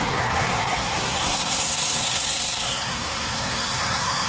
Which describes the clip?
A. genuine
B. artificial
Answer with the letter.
B